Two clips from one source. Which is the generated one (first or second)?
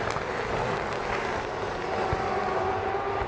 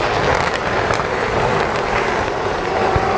second